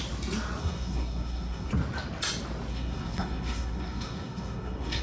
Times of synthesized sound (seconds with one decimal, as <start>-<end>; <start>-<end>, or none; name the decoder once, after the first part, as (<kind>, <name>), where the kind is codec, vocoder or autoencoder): 0.6-1.7 (codec, SNAC); 2.7-5.0